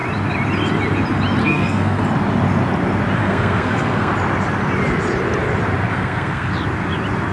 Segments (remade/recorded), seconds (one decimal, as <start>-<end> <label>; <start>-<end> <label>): 0.0-1.4 recorded; 1.4-2.0 remade; 2.0-3.2 recorded; 3.2-4.1 remade; 4.1-5.9 recorded; 5.9-6.5 remade; 6.5-7.3 recorded